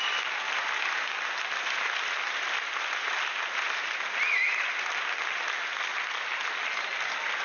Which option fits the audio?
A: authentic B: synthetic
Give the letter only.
A